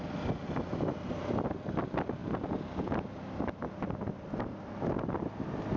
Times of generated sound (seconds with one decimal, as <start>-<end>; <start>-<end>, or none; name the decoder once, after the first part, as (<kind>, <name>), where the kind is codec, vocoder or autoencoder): none